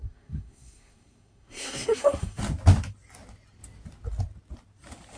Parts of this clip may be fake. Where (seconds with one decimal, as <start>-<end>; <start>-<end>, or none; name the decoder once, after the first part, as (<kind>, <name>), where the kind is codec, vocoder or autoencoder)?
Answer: 0.0-2.4 (codec, SNAC)